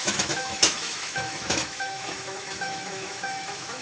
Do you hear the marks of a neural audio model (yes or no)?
yes